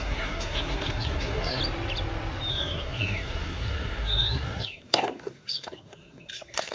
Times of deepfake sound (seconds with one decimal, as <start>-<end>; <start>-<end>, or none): 0.0-1.6; 2.5-6.7